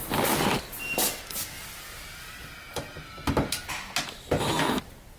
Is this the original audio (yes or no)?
yes